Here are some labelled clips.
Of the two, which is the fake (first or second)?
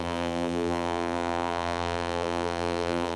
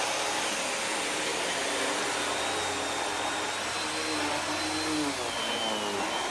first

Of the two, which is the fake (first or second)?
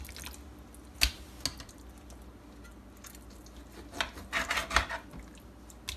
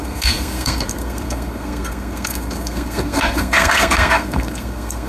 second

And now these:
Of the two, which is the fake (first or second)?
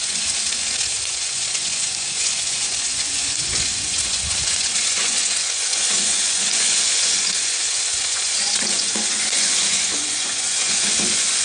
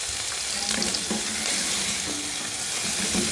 first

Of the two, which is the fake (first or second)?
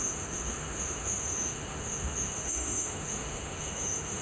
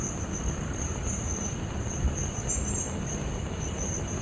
first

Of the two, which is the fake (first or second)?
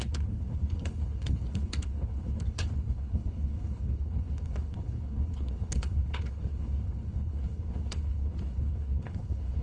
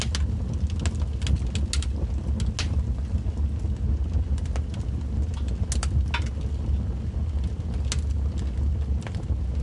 first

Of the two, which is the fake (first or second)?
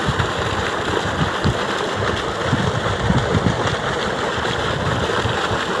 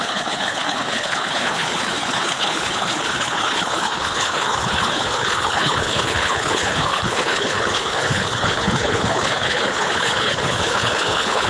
second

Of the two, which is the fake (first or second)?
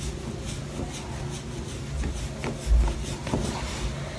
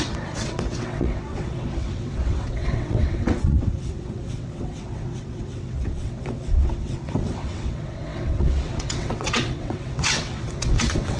second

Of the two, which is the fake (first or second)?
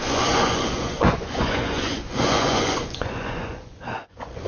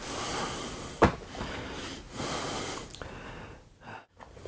first